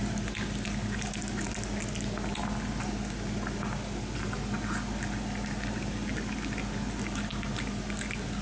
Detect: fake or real real